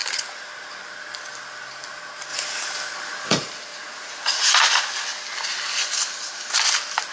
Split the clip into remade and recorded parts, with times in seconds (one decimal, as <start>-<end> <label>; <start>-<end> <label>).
0.0-3.7 recorded; 3.7-4.5 remade; 4.5-7.1 recorded